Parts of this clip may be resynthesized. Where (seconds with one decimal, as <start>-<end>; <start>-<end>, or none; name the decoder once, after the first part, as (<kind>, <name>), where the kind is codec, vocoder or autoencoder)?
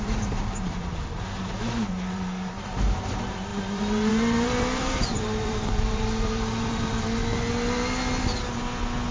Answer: 0.0-7.2 (vocoder, BigVGAN v2)